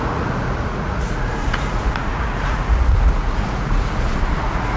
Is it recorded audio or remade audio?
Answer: remade